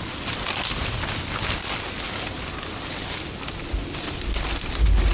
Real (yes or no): yes